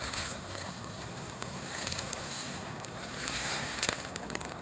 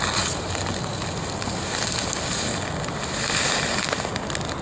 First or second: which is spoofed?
first